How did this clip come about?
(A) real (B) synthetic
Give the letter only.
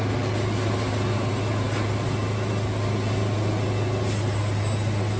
A